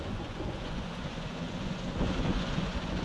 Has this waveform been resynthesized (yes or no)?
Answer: yes